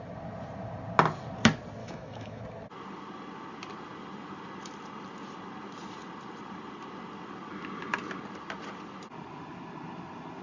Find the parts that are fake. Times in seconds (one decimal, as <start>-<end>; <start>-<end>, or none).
1.8-2.4